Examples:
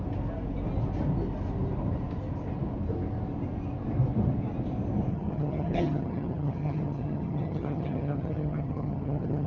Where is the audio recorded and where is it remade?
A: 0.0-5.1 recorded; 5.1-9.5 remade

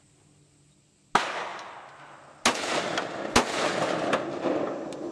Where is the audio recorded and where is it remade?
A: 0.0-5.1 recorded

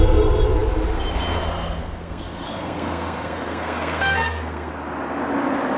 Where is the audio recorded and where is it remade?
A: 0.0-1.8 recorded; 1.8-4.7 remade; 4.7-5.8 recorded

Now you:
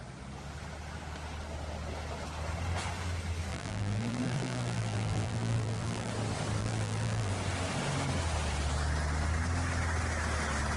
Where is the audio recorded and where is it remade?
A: 0.0-3.5 recorded; 3.5-6.1 remade; 6.1-6.6 recorded; 6.6-7.3 remade; 7.3-10.8 recorded

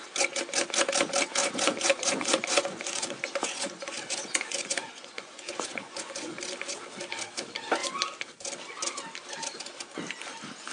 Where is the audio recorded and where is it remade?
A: 0.0-1.4 recorded; 1.4-6.4 remade; 6.4-10.7 recorded